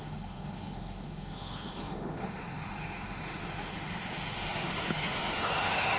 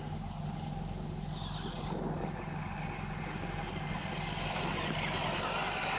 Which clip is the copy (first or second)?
first